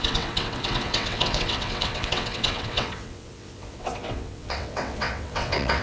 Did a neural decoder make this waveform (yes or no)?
yes